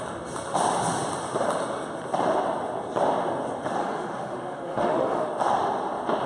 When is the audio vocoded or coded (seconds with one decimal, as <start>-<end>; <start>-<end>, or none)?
3.8-5.3